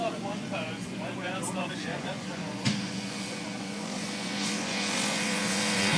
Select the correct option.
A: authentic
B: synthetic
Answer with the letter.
B